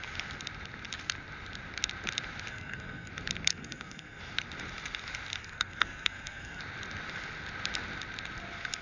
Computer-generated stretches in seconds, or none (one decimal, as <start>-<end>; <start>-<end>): 2.5-3.1; 3.5-4.2; 5.4-6.6